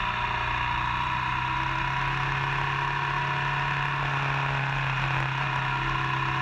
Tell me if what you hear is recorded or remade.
recorded